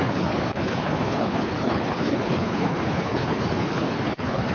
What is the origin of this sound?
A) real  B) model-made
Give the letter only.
B